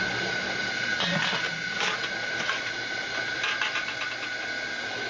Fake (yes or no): no